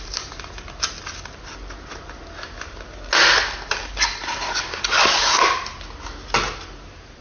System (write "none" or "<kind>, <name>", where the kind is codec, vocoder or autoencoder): none